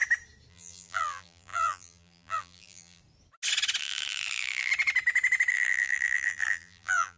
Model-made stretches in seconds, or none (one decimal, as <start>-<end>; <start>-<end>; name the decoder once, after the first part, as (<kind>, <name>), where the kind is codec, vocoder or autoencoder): 0.5-3.0 (vocoder, BigVGAN v2); 3.8-4.7; 5.5-7.2